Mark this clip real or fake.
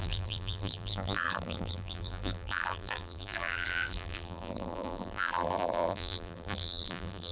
fake